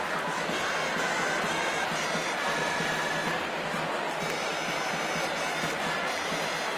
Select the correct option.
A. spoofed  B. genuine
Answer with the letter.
B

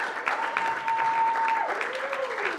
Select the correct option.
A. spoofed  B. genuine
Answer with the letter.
A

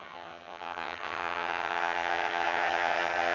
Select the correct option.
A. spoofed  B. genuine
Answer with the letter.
A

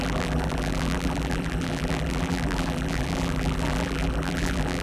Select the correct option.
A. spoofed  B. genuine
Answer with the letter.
A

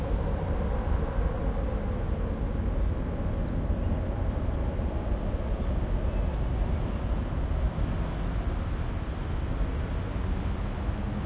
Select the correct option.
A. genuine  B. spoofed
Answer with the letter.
A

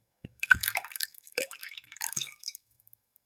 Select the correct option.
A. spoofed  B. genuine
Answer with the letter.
A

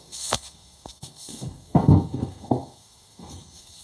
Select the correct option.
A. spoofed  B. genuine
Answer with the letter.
A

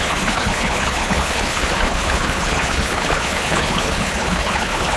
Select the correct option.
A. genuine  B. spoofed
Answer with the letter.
B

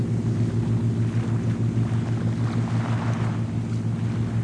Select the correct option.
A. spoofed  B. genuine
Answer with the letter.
B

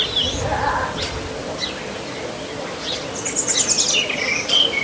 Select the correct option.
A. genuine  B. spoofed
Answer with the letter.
A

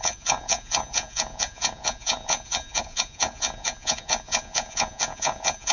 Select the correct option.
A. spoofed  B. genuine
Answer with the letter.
A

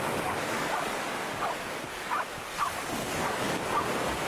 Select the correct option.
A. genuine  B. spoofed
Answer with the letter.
B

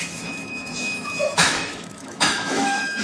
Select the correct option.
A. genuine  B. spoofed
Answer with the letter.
B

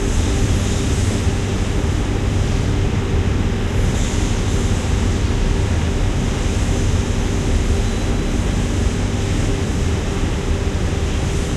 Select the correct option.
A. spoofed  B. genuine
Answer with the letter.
B